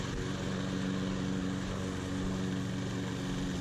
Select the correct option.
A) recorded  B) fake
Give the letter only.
A